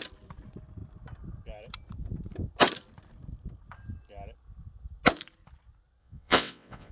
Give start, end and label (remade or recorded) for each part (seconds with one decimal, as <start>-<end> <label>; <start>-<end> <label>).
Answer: 0.0-6.0 recorded; 6.0-6.9 remade

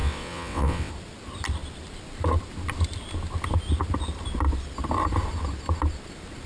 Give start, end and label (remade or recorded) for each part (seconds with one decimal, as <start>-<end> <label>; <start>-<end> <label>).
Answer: 0.0-0.9 remade; 0.9-6.5 recorded

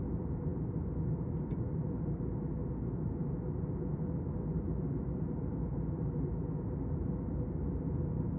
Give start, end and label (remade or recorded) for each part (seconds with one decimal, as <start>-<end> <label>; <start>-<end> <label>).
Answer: 0.0-8.4 recorded

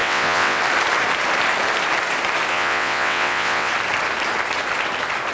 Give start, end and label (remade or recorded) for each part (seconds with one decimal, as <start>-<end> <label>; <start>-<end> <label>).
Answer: 0.0-0.6 remade; 0.6-2.5 recorded; 2.5-3.7 remade; 3.7-5.3 recorded